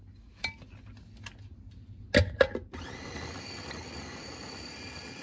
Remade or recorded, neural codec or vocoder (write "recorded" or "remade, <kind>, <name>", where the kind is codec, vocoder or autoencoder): recorded